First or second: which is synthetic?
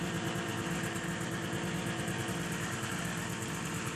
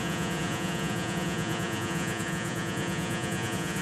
second